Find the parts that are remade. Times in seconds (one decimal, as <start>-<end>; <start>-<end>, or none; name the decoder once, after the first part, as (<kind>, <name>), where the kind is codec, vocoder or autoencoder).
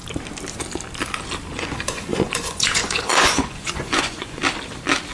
1.5-4.4 (vocoder, Vocos)